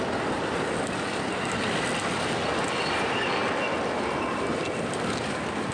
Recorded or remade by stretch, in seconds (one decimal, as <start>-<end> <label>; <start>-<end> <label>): 0.0-5.7 recorded

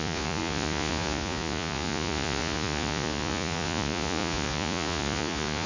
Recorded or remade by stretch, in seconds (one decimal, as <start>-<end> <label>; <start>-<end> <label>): 0.0-5.7 remade

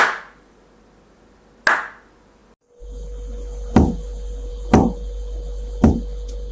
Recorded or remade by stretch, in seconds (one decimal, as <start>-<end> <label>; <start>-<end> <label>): 0.0-6.5 recorded

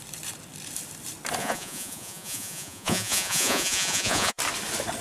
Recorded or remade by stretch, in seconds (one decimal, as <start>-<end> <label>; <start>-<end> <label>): 0.0-1.4 recorded; 1.4-4.4 remade; 4.4-5.0 recorded